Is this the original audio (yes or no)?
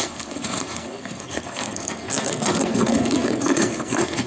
no